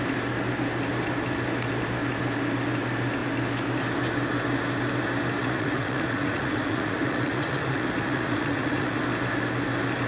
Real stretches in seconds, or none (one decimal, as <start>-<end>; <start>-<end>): 0.0-5.4; 9.0-10.1